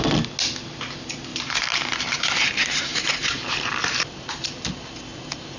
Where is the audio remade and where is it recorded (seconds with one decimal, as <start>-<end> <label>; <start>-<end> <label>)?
0.0-1.3 recorded; 1.3-4.7 remade; 4.7-5.6 recorded